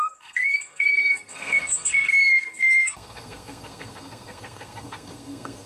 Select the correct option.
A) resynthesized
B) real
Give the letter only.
A